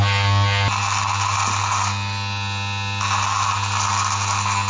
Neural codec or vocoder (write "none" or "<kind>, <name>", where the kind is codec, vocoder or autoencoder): none